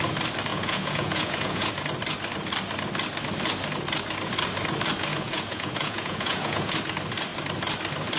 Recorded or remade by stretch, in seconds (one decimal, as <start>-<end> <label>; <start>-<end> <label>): 0.0-0.5 recorded; 0.5-1.7 remade; 1.7-5.1 recorded; 5.1-6.7 remade; 6.7-8.2 recorded

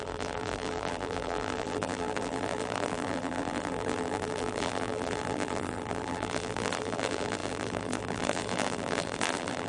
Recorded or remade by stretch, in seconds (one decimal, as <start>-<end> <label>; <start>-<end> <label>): 0.0-9.7 remade

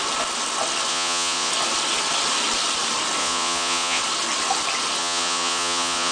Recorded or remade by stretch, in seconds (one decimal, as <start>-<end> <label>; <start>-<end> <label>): 0.0-0.9 recorded; 0.9-1.5 remade; 1.5-3.2 recorded; 3.2-4.0 remade; 4.0-5.0 recorded; 5.0-6.1 remade

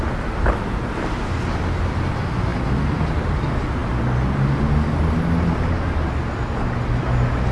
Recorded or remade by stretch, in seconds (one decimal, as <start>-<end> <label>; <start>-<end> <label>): 0.0-7.5 recorded

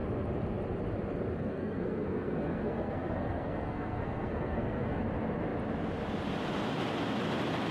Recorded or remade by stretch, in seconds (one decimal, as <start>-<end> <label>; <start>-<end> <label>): 0.0-1.4 recorded; 1.4-5.0 remade; 5.0-7.7 recorded

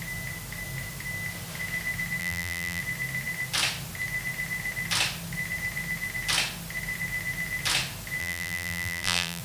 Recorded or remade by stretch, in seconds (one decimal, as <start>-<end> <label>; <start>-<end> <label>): 0.0-2.2 recorded; 2.2-2.8 remade; 2.8-8.2 recorded; 8.2-9.4 remade